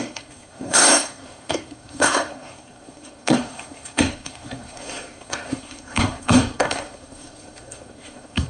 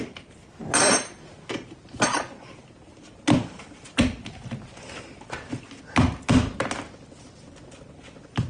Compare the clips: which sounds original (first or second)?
second